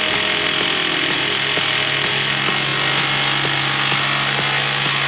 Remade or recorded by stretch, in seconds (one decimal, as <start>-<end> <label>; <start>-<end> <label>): 0.0-5.1 recorded